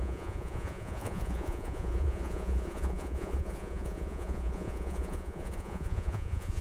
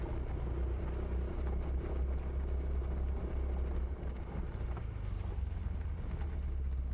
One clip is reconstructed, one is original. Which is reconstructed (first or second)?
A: first